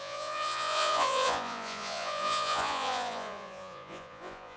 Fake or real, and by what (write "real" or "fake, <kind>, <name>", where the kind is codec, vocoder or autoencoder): fake, vocoder, Vocos